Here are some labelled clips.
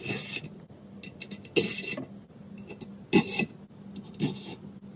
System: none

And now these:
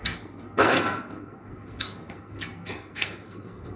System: codec, SNAC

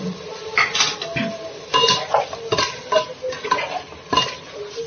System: none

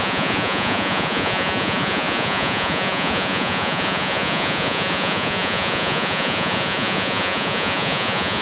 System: vocoder, Vocos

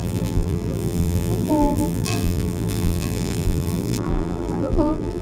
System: vocoder, BigVGAN v2